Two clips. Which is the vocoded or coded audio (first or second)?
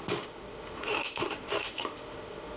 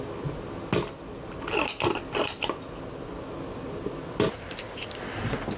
first